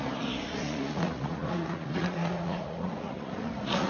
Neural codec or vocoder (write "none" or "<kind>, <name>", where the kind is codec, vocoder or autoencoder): vocoder, Vocos